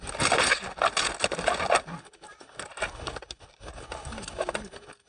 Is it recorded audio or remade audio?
recorded